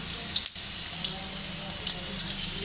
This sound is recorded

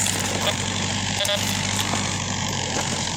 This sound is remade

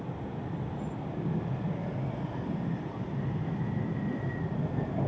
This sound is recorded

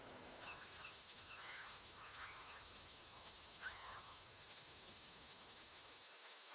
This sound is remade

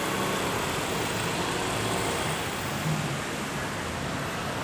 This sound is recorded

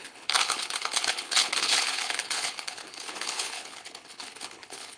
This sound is remade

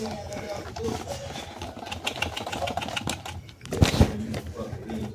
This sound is recorded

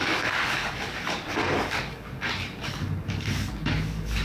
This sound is remade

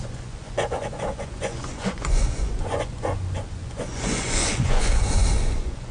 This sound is remade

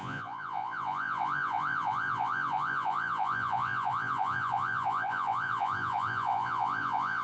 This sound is remade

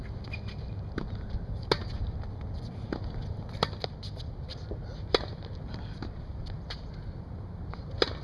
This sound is recorded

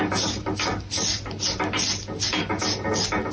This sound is recorded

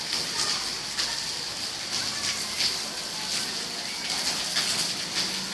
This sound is recorded